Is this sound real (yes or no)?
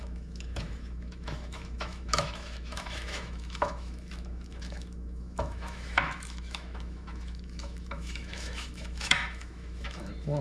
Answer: no